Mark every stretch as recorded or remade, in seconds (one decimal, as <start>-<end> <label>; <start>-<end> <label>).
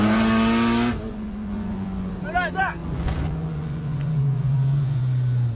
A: 0.0-1.1 recorded; 1.1-2.1 remade; 2.1-2.8 recorded; 2.8-5.0 remade; 5.0-5.5 recorded